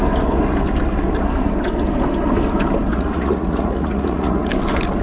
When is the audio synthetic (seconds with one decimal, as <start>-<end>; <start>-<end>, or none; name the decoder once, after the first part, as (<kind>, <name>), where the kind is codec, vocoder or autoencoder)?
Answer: 2.9-4.5 (vocoder, Vocos)